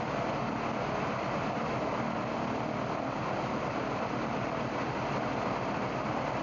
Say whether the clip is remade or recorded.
recorded